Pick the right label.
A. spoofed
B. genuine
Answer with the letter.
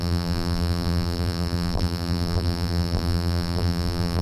A